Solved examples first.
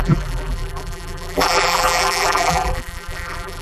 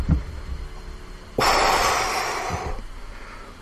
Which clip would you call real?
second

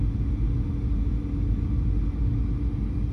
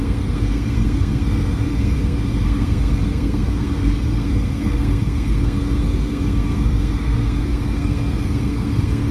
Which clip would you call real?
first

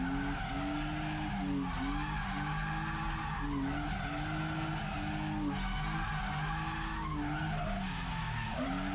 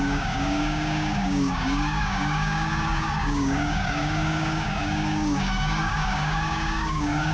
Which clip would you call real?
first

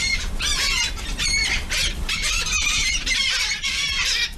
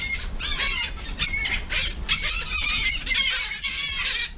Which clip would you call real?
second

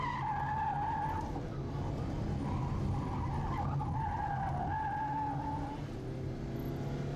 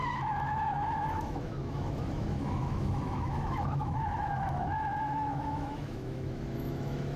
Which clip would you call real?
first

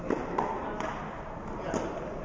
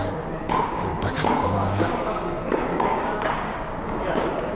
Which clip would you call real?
first